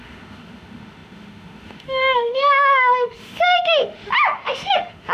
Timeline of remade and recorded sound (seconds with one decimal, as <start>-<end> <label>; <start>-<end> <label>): 0.0-5.1 remade